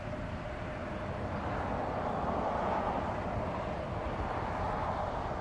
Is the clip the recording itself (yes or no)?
yes